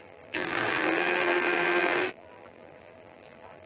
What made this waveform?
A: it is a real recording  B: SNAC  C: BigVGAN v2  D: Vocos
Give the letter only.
C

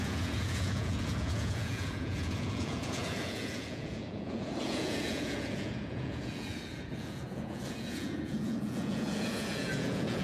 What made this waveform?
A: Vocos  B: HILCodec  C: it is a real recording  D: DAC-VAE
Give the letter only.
A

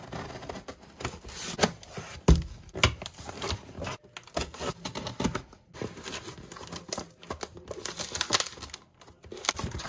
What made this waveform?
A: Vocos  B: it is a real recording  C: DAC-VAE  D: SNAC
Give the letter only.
B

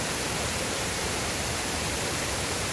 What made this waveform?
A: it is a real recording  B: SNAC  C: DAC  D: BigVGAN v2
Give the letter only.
D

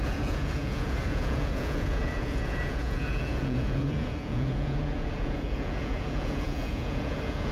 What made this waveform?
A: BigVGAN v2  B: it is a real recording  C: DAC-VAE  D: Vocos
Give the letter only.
D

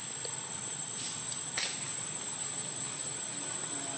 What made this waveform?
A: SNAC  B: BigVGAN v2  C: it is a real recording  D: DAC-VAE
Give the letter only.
B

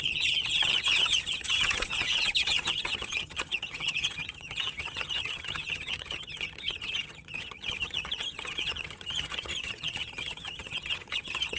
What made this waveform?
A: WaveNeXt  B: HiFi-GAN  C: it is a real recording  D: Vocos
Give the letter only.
B